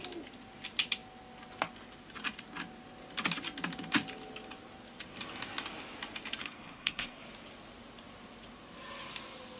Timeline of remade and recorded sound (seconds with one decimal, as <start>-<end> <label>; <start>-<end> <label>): 0.0-6.4 recorded; 6.4-7.2 remade; 7.2-9.6 recorded